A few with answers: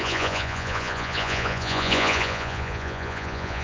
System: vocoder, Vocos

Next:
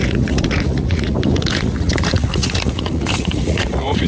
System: vocoder, Vocos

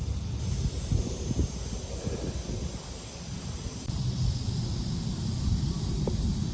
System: none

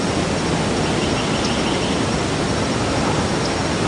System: none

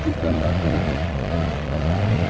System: vocoder, Vocos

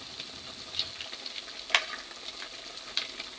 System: none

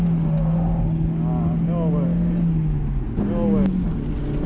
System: none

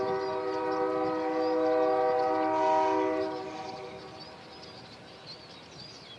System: none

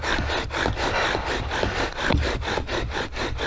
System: none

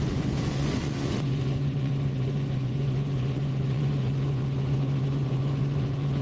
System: vocoder, Vocos